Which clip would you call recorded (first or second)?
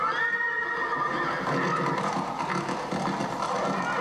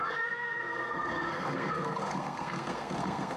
first